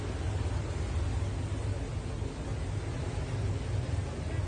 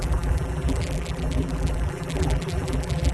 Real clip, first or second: first